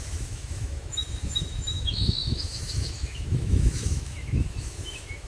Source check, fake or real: fake